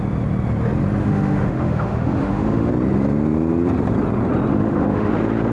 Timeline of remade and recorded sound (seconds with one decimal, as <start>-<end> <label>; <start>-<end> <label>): 0.0-1.0 recorded; 1.0-2.7 remade; 2.7-4.5 recorded; 4.5-5.1 remade; 5.1-5.5 recorded